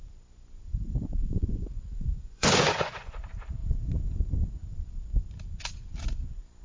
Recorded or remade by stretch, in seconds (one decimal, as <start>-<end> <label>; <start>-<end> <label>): 0.0-1.2 recorded; 1.2-3.1 remade; 3.1-6.6 recorded